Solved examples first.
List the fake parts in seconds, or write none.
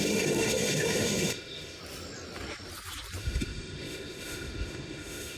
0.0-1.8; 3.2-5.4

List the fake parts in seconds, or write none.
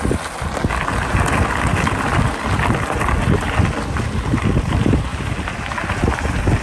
none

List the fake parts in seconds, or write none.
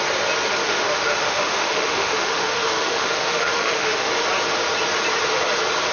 0.6-4.1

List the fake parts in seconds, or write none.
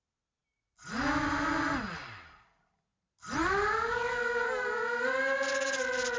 none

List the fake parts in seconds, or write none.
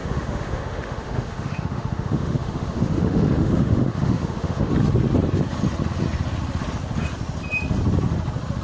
0.0-4.7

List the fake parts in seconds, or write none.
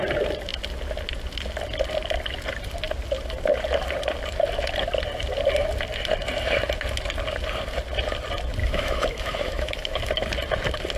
8.6-10.1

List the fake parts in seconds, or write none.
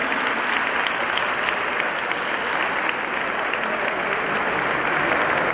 none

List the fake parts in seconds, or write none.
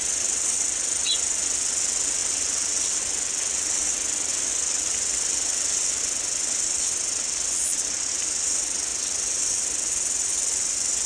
none